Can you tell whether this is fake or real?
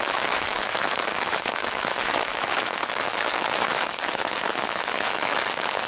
fake